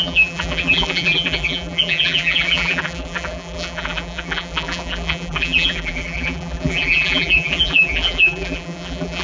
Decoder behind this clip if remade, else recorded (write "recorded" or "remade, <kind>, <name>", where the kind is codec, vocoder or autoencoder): remade, vocoder, BigVGAN v2